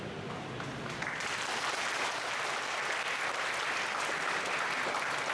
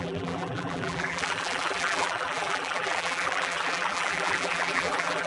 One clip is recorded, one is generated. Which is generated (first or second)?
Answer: second